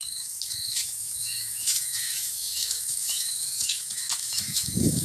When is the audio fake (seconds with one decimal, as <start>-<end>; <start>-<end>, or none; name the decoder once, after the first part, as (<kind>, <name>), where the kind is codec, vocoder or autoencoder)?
0.0-5.0 (autoencoder, DAC-VAE)